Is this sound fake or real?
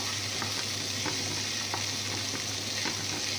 real